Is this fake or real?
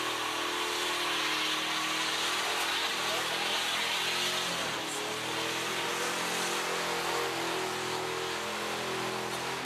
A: real